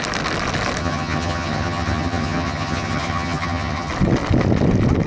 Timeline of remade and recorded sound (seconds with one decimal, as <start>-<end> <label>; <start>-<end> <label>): 0.0-0.8 recorded; 0.8-3.9 remade; 3.9-5.1 recorded